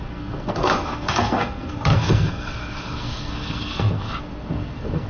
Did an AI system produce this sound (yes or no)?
yes